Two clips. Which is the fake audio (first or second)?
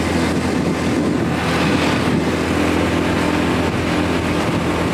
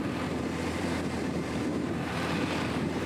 second